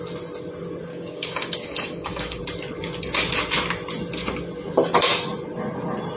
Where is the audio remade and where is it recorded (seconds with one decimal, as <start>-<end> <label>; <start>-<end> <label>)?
0.0-0.9 recorded; 0.9-2.4 remade; 2.4-6.2 recorded